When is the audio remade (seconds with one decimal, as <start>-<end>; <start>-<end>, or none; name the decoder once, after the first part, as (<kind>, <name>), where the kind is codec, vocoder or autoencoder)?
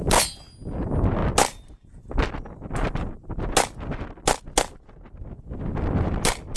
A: none